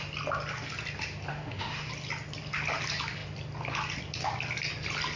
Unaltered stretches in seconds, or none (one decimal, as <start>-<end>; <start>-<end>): 0.0-1.3; 1.9-5.2